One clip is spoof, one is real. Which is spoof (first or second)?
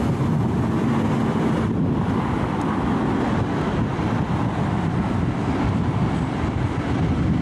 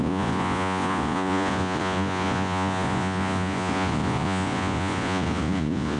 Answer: second